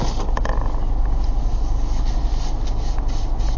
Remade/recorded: recorded